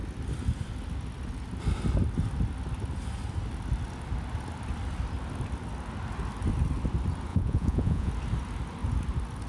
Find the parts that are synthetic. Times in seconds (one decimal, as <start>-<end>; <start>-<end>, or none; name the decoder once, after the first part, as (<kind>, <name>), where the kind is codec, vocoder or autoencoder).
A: 7.3-8.1 (vocoder, Vocos)